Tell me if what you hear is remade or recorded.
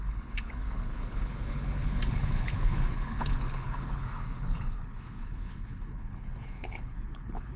remade